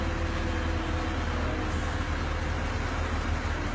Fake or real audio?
real